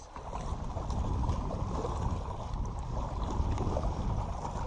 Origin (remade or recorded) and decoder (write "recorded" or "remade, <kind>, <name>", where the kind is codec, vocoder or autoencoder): recorded